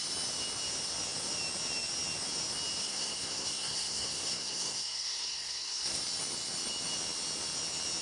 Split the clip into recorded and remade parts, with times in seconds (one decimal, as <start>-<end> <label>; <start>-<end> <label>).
0.0-2.8 recorded; 2.8-6.0 remade; 6.0-8.0 recorded